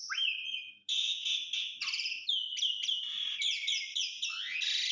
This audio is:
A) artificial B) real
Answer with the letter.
B